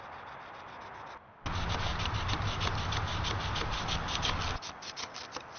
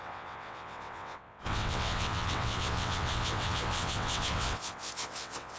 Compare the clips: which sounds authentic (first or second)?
first